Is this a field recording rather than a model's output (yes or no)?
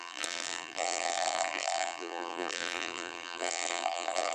no